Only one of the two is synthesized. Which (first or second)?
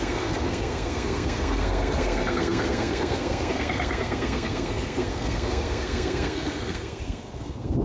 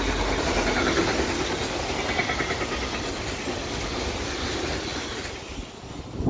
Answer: first